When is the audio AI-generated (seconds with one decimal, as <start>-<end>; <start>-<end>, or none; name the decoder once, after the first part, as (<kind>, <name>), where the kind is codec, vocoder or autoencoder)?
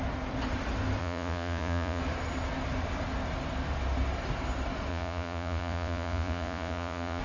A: 1.0-2.0 (vocoder, Vocos); 4.9-7.2